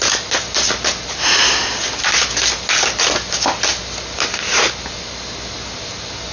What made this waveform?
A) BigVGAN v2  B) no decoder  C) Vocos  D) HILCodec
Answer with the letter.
B